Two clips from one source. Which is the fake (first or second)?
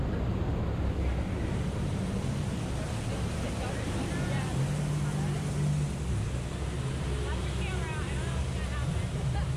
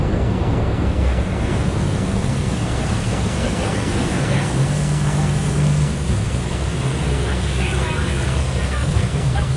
second